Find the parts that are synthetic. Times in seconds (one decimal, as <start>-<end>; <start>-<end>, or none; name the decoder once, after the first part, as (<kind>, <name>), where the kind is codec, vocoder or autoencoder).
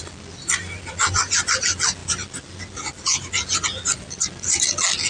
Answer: none